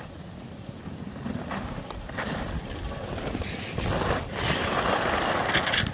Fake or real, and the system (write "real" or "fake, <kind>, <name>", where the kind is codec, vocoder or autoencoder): real